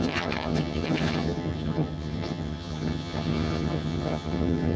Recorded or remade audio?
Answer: remade